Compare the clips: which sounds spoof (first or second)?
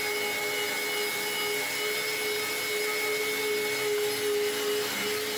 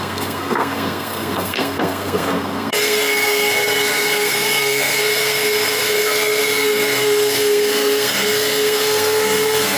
second